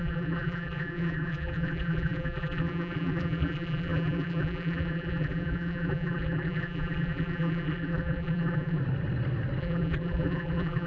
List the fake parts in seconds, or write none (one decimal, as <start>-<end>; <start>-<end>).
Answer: 0.0-8.8; 9.6-10.9